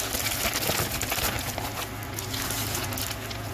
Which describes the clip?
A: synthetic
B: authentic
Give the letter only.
B